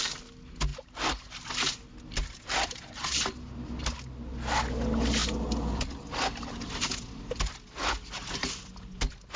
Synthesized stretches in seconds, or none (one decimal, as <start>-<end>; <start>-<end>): none